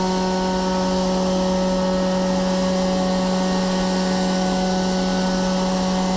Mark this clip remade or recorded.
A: recorded